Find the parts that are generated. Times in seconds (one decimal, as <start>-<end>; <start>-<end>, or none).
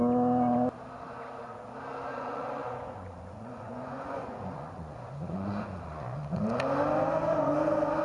2.1-6.6